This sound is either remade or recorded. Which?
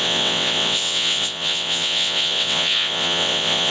remade